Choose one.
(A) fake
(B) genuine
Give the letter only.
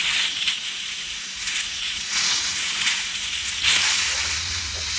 A